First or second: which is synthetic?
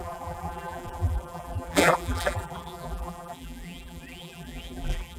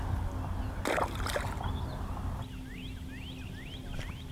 first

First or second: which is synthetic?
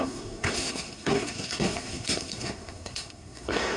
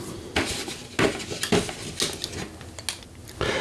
first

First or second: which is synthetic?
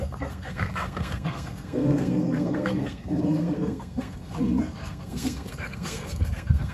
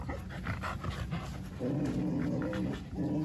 first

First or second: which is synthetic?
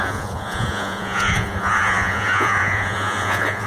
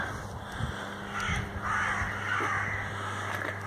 first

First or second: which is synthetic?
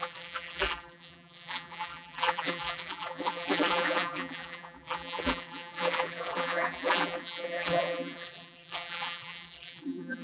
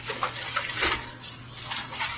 first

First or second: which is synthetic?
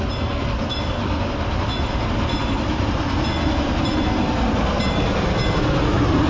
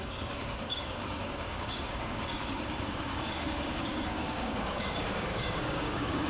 second